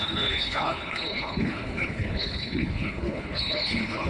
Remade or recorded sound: remade